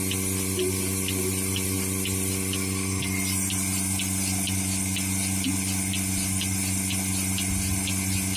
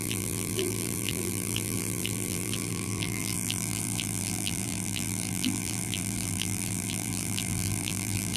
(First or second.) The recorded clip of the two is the first